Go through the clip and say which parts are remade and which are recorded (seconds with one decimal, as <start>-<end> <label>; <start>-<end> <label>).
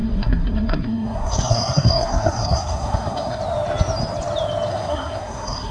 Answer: 0.0-3.4 remade; 3.4-4.7 recorded; 4.7-5.7 remade